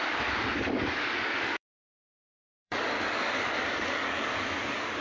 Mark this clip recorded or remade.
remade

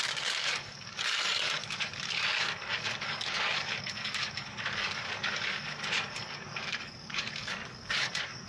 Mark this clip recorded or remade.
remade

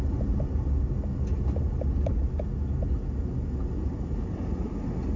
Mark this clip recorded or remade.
recorded